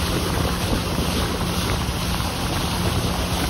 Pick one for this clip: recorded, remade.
recorded